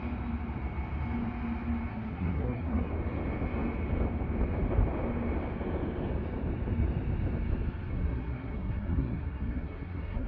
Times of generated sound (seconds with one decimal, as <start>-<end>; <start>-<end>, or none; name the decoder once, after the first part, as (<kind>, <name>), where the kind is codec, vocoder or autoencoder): 1.9-2.9 (codec, SNAC); 7.9-10.3